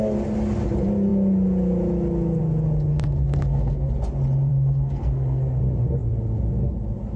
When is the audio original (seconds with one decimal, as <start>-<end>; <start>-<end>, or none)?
0.0-2.9; 3.9-4.5; 5.6-7.2